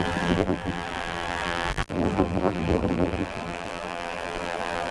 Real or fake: fake